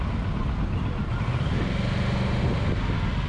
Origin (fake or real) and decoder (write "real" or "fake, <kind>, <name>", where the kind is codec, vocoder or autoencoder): real